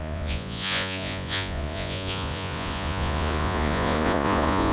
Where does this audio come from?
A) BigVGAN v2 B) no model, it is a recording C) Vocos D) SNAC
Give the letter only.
C